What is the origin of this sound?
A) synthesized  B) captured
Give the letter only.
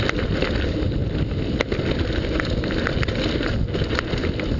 B